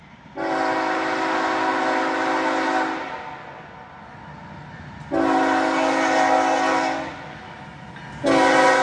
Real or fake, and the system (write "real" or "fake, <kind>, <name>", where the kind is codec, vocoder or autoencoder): real